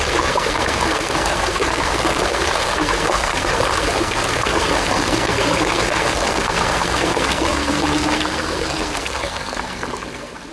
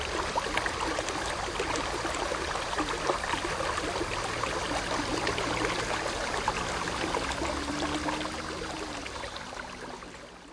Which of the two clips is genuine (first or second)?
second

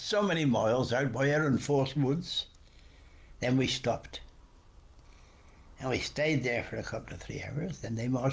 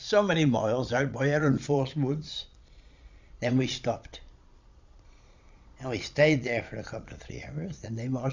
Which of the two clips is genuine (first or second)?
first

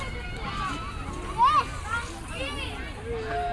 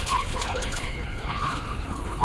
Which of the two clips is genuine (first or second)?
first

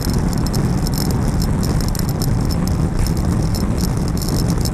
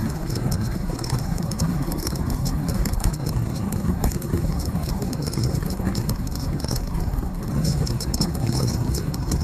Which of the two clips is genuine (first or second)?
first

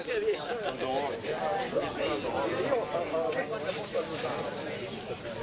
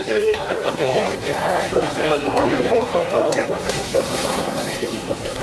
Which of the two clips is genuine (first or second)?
first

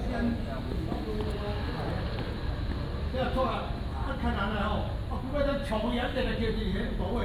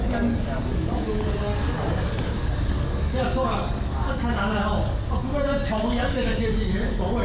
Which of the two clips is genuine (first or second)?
first